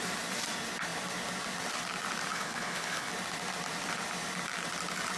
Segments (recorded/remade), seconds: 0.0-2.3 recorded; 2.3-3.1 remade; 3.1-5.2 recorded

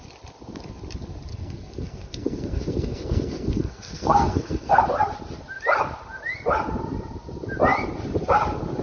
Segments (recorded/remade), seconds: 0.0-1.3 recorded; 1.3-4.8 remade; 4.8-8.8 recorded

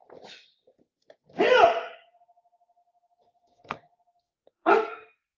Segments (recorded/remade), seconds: 0.0-2.8 recorded; 2.8-5.4 remade

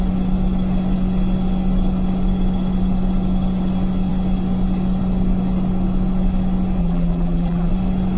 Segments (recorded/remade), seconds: 0.0-6.8 recorded; 6.8-7.7 remade; 7.7-8.2 recorded

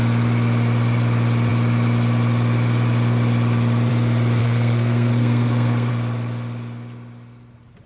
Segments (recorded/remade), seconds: 0.0-4.4 recorded; 4.4-5.9 remade; 5.9-7.9 recorded

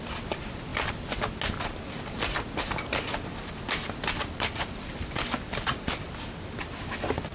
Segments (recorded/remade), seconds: 0.0-7.3 recorded

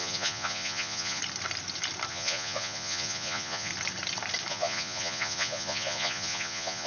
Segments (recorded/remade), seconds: 0.0-1.2 remade; 1.2-2.1 recorded; 2.1-3.7 remade; 3.7-4.5 recorded; 4.5-6.9 remade

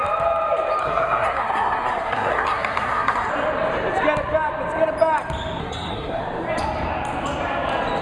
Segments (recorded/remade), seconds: 0.0-0.8 recorded; 0.8-3.3 remade; 3.3-5.6 recorded; 5.6-6.2 remade; 6.2-8.0 recorded